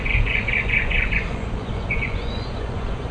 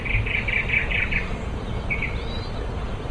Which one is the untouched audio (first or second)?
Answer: second